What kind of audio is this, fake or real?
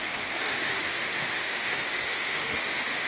fake